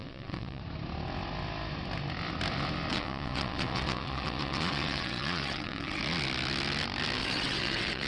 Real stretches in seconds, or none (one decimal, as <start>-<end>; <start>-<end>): 0.6-2.9; 6.0-7.2